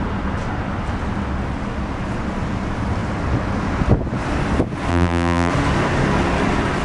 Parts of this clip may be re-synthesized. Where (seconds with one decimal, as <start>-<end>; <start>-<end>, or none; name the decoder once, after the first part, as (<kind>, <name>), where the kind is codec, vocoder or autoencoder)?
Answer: 4.9-5.5 (vocoder, BigVGAN v2)